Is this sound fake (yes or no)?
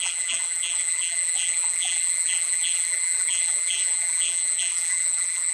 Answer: yes